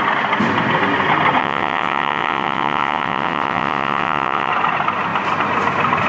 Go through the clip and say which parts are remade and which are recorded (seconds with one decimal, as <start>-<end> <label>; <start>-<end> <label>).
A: 0.0-1.4 recorded; 1.4-4.5 remade; 4.5-6.1 recorded